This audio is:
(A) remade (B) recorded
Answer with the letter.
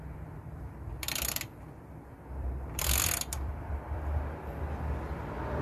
A